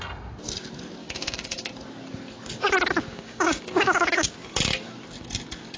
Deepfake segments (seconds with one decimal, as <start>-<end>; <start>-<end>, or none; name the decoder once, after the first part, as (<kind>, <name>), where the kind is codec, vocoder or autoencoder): 1.0-1.7 (codec, DAC); 3.1-4.3